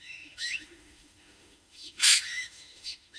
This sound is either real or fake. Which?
fake